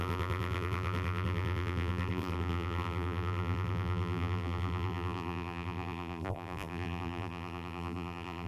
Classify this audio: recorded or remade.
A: remade